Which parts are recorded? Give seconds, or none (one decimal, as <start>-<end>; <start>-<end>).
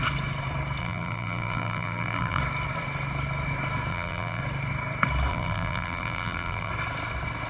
0.0-0.8; 2.4-3.9; 4.4-5.3; 6.7-7.5